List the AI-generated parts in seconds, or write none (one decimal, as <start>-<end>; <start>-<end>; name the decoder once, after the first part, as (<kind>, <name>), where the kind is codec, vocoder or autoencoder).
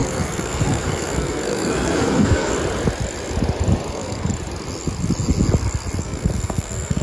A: 0.0-2.5 (codec, SNAC); 3.9-4.3; 6.0-7.0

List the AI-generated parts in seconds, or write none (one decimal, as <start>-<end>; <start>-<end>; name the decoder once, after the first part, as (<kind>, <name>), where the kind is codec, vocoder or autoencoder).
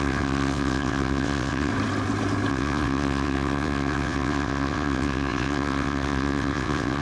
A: 0.0-1.7 (vocoder, WaveNeXt); 2.5-7.0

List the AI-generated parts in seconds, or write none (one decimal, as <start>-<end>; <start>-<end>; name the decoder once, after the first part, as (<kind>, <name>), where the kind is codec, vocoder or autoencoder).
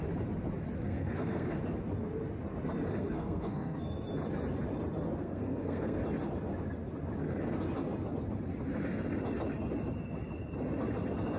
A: 0.8-1.6 (codec, SNAC); 2.9-3.8; 5.2-6.0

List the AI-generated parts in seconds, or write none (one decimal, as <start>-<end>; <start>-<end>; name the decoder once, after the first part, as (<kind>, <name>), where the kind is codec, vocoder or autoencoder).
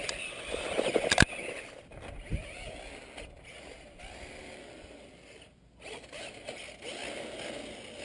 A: none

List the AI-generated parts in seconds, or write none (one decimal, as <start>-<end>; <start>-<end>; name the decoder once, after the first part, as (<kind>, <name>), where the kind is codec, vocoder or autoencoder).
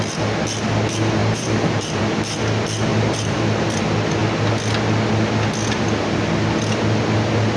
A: 1.2-2.0 (vocoder, BigVGAN v2); 2.9-3.8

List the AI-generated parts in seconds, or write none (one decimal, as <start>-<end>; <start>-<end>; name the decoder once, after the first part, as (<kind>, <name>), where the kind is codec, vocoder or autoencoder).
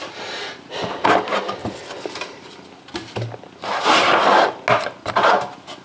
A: none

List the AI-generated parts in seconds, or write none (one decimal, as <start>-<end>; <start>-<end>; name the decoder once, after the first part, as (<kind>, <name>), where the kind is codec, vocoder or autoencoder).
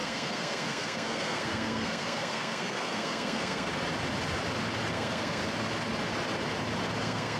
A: 0.0-3.7 (codec, SNAC); 4.9-5.4; 7.0-7.4